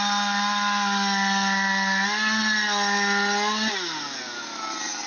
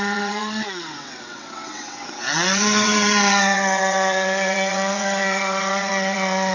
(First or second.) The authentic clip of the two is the first